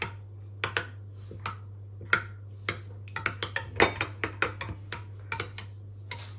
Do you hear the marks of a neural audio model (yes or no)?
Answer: no